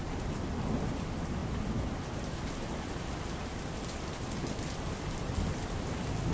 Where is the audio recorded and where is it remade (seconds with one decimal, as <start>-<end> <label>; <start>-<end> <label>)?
0.0-6.3 recorded